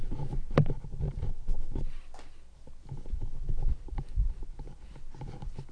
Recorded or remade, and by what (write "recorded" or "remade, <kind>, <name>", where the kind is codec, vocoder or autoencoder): recorded